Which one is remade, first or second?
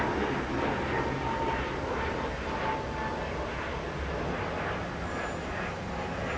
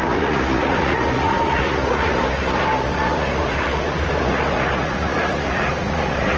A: second